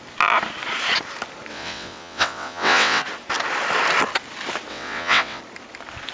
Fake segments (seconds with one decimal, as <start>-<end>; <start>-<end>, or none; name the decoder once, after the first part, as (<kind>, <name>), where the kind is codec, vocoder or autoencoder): 1.5-3.0 (vocoder, WaveNeXt); 4.7-5.4